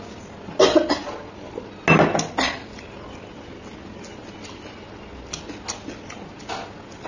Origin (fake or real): real